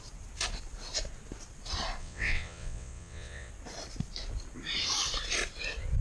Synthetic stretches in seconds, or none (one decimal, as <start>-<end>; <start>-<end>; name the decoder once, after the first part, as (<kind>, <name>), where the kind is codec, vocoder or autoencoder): 2.0-3.5 (vocoder, WaveNeXt)